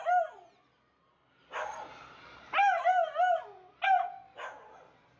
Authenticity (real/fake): real